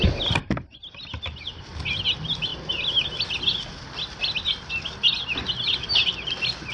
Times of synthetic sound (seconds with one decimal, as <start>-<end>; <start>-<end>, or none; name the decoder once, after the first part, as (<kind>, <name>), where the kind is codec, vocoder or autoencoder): none